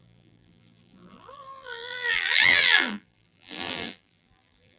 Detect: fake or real fake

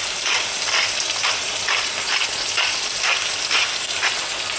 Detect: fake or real real